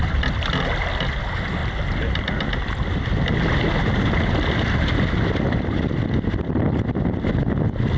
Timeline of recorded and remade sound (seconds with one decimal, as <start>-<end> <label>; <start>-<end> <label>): 0.0-8.0 recorded